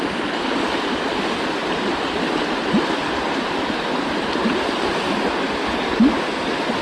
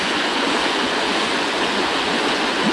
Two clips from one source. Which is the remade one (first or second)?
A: second